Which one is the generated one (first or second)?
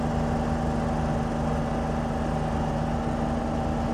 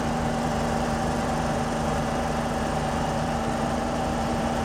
second